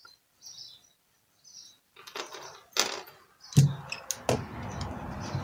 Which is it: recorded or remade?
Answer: recorded